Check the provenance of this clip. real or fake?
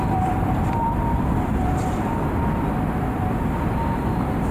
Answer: fake